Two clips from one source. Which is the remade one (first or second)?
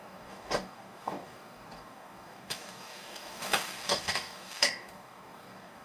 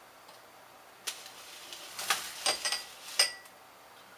first